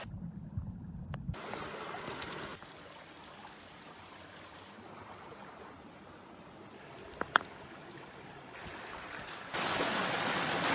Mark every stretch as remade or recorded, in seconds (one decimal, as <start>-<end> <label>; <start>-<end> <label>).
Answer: 0.0-10.7 recorded